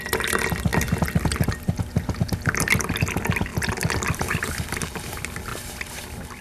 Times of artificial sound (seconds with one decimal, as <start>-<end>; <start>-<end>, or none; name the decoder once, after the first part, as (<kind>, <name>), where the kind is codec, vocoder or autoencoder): none